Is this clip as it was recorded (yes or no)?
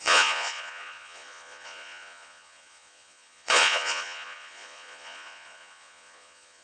no